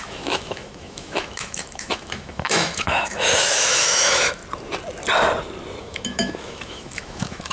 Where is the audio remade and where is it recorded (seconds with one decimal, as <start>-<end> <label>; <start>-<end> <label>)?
0.0-4.4 remade; 4.4-5.8 recorded; 5.8-7.5 remade